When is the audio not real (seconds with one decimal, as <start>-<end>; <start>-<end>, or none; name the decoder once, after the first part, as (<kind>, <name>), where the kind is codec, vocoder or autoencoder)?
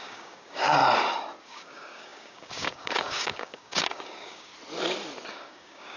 0.0-0.8 (codec, DAC); 1.4-4.5; 5.3-6.0